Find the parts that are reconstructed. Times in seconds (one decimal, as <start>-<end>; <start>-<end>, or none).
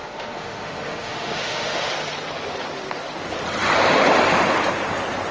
0.0-1.9